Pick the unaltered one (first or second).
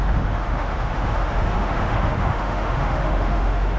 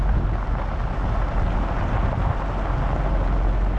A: second